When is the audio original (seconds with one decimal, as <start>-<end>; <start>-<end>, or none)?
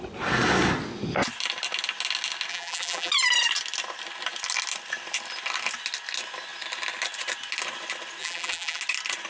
0.0-2.5; 3.1-8.2; 8.8-9.3